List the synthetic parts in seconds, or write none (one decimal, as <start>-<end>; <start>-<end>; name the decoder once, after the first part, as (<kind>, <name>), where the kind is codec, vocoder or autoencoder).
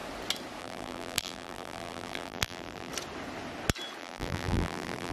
0.6-2.9 (vocoder, BigVGAN v2); 4.0-5.1